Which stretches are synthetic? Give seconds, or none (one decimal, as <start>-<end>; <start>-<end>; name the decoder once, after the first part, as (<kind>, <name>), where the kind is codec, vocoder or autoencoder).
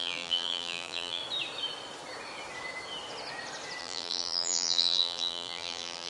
0.0-1.2 (vocoder, BigVGAN v2); 3.8-6.1